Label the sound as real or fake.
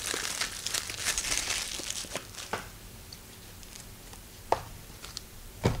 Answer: fake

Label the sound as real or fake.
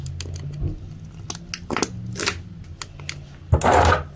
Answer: real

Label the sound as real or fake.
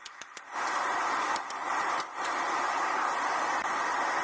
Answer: real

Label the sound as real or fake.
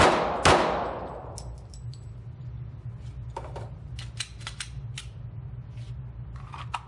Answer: real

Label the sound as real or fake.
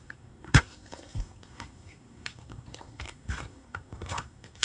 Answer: fake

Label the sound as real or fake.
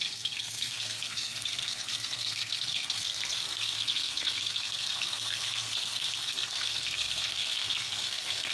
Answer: fake